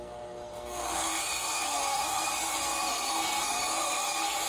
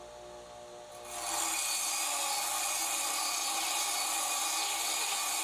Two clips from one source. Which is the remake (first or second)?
first